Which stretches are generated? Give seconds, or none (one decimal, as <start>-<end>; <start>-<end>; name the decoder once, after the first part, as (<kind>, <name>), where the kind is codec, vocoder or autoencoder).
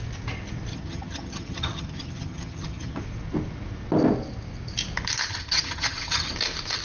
0.7-3.0 (vocoder, HiFi-GAN); 5.3-6.3